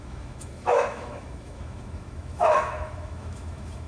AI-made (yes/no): yes